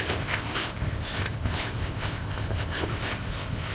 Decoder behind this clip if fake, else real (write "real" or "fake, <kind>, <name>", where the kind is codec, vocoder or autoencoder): fake, codec, ZipCodec